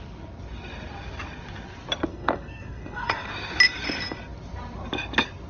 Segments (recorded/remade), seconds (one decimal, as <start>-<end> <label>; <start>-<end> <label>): 0.0-2.1 recorded; 2.1-3.3 remade; 3.3-5.5 recorded